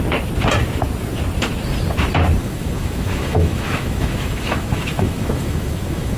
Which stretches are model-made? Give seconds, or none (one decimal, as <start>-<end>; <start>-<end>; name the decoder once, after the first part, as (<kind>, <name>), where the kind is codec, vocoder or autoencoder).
2.4-6.2 (autoencoder, DAC-VAE)